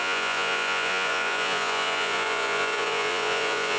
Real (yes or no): no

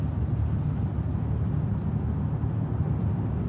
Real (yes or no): yes